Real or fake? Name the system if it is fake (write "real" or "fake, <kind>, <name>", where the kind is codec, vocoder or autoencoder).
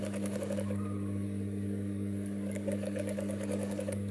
fake, codec, DAC